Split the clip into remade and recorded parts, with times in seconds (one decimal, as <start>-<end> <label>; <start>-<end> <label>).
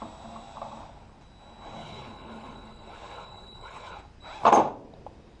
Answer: 0.0-1.8 recorded; 1.8-4.0 remade; 4.0-5.4 recorded